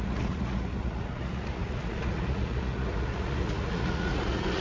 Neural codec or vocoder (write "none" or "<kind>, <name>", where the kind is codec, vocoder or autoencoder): vocoder, Vocos